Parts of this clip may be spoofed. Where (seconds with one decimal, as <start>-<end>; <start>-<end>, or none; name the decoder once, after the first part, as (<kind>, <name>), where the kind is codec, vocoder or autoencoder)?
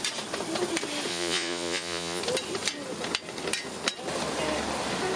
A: 1.1-2.2 (vocoder, Vocos)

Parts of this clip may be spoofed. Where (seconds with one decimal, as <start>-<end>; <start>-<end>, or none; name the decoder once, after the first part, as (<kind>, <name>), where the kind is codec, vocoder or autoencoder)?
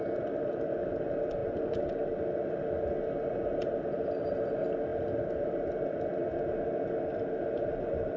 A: none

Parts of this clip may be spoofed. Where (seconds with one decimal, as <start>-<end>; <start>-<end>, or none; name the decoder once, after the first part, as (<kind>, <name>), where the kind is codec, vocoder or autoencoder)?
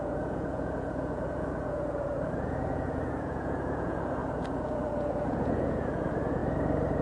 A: 0.0-6.4 (vocoder, Vocos)